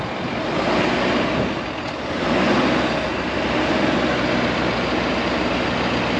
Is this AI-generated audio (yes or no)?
no